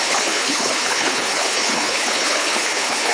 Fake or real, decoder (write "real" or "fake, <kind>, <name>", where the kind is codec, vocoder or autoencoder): fake, codec, HILCodec